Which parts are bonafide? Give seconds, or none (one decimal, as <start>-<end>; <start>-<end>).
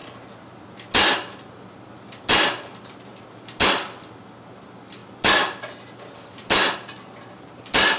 0.0-8.0